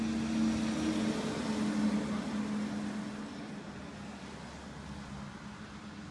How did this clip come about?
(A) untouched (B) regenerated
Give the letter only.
A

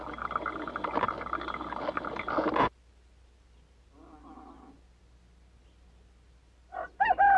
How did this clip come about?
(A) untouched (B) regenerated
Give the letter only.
A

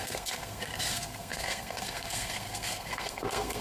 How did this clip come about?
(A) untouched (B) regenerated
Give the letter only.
B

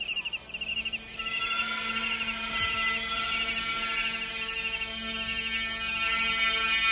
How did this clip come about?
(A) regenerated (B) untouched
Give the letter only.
B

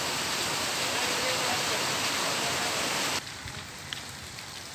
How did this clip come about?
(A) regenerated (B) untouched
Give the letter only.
B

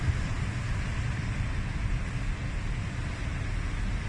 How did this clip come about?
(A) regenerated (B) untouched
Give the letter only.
B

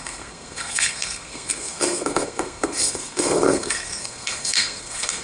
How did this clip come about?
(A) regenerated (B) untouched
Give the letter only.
A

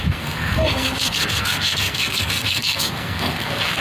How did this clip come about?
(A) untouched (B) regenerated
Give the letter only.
B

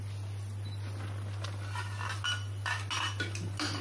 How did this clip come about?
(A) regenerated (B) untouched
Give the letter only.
B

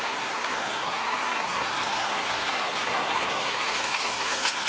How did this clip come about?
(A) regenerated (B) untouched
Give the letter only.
A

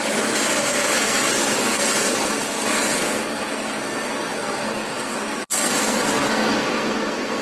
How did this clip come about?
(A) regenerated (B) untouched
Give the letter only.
A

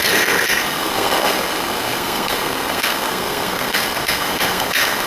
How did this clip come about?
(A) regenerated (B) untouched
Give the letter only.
A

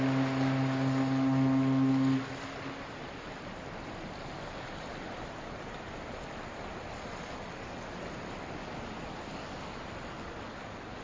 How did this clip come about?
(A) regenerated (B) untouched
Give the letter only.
B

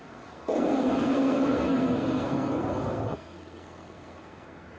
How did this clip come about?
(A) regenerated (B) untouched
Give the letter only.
A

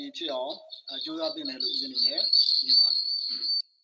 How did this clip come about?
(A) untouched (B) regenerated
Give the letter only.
A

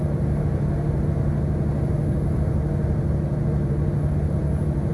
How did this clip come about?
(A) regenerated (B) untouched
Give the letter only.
B